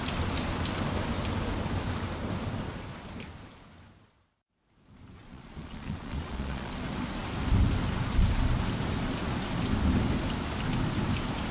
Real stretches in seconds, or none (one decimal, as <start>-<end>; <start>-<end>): 0.0-5.2; 6.7-11.5